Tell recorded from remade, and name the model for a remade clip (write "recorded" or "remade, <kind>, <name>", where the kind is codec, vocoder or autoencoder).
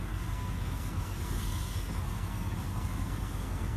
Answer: remade, codec, SNAC